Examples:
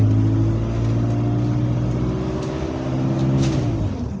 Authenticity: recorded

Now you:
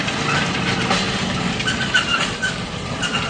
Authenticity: recorded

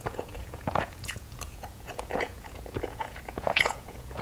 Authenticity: remade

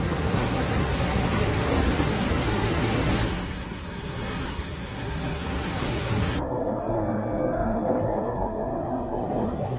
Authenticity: remade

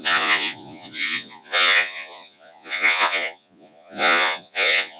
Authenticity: remade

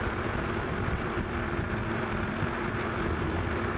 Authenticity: recorded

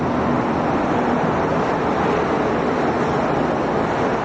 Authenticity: recorded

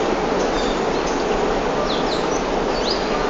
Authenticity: recorded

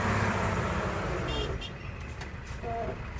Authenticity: remade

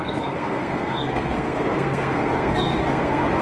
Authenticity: remade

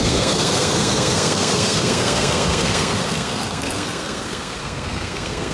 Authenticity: remade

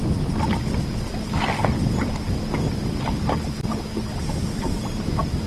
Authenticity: recorded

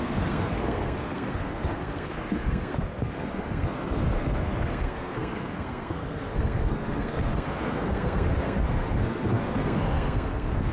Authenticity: remade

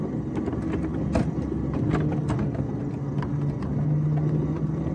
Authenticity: recorded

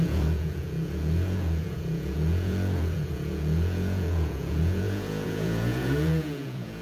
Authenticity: remade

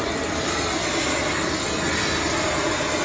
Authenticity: recorded